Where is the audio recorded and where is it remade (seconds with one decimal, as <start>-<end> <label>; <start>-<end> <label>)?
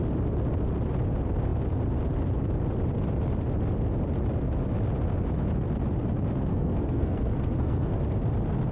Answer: 0.0-6.5 recorded; 6.5-8.0 remade; 8.0-8.7 recorded